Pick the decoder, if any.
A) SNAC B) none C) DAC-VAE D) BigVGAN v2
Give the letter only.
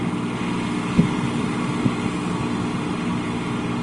B